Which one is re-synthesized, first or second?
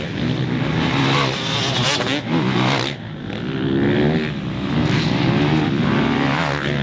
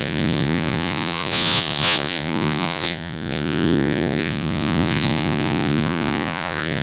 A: second